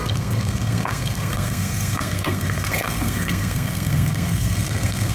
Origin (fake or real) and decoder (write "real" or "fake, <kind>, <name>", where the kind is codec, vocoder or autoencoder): fake, codec, SNAC